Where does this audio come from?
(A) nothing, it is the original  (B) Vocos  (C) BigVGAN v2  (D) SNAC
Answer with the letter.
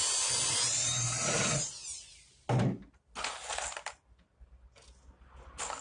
A